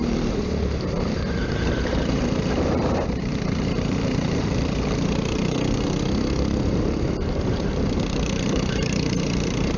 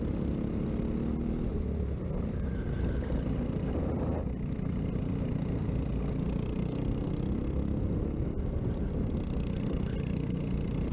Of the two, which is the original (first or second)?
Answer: second